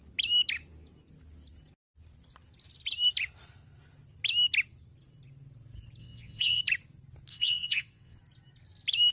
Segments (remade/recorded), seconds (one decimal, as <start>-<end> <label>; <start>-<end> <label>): 0.0-6.0 recorded; 6.0-6.6 remade; 6.6-7.3 recorded; 7.3-8.2 remade; 8.2-9.1 recorded